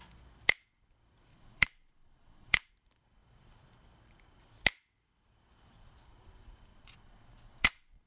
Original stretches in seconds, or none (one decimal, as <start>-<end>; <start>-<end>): 0.0-1.3; 2.7-6.7